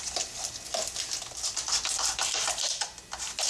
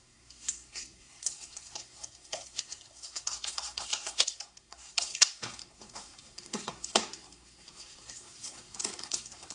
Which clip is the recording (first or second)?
first